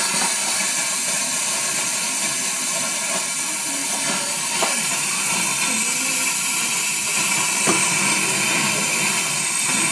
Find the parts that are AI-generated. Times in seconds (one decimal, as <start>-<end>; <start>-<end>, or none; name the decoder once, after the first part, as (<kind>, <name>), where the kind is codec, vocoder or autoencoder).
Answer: 3.8-5.1 (vocoder, BigVGAN v2)